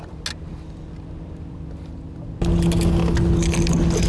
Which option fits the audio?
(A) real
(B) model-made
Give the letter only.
A